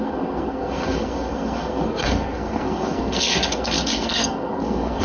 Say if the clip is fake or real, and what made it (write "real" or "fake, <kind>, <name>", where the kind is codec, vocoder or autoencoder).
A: fake, codec, SNAC